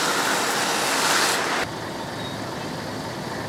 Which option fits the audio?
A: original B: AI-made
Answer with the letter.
A